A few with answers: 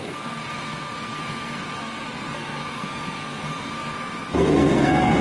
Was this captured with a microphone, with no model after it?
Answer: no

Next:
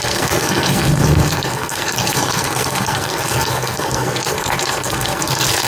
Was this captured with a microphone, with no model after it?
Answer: no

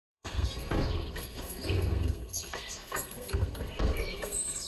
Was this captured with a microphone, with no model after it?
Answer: no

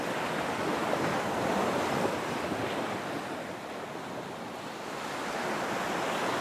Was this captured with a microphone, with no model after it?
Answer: yes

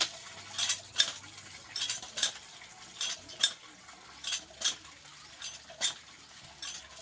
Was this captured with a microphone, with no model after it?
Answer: yes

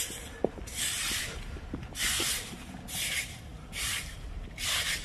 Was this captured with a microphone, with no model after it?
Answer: yes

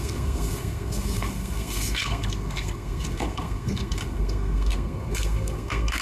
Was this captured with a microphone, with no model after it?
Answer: no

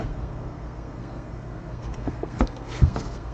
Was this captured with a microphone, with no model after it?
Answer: no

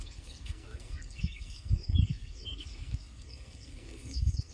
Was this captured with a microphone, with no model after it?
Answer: no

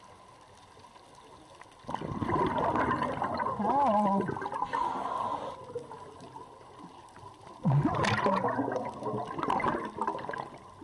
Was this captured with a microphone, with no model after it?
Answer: yes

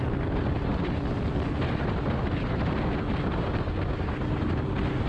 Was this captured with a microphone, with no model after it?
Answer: yes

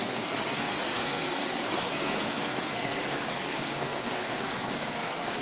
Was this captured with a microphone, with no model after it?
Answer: no